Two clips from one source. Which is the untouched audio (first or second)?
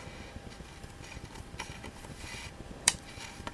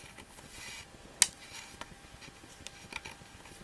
second